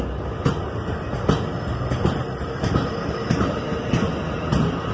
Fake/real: real